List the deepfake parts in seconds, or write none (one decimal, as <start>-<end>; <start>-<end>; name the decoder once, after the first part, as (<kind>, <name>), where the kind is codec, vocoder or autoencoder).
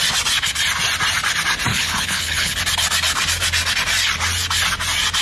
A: 1.7-2.6 (codec, HILCodec)